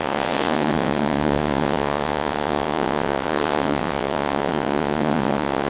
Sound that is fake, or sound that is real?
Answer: fake